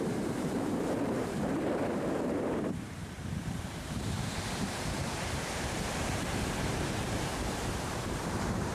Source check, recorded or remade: remade